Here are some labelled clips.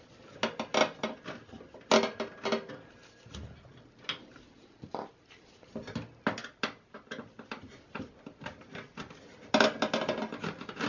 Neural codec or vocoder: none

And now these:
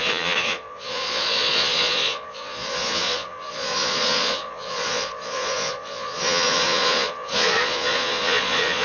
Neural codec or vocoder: vocoder, Vocos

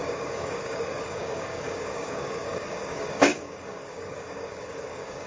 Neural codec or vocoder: codec, DAC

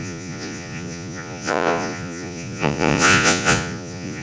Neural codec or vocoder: vocoder, Vocos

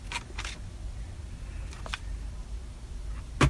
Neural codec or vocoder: none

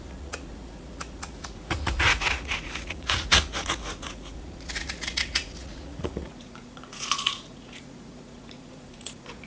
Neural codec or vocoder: vocoder, Vocos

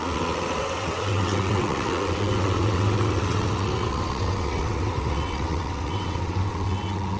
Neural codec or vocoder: vocoder, WaveNeXt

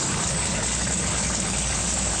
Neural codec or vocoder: codec, DAC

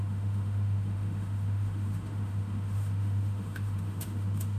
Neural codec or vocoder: autoencoder, DAC-VAE